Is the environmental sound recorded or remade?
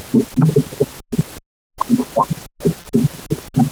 recorded